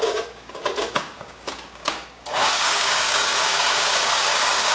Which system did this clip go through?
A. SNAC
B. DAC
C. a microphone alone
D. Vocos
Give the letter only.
B